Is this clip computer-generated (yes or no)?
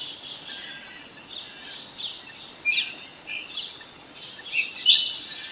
no